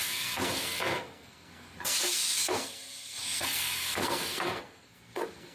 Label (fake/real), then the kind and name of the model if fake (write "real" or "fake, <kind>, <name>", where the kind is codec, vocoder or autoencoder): fake, codec, SNAC